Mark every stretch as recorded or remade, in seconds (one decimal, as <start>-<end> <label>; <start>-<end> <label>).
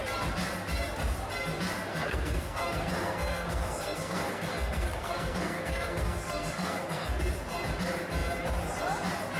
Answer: 0.0-1.9 recorded; 1.9-7.2 remade; 7.2-9.4 recorded